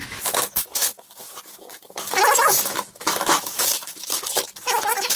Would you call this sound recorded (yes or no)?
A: no